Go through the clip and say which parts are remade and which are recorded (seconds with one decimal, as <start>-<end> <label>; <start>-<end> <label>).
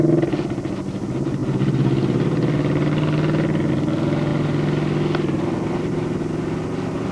0.0-7.1 recorded